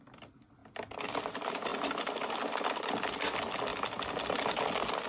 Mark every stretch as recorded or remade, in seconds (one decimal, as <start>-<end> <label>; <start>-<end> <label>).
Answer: 0.0-5.1 recorded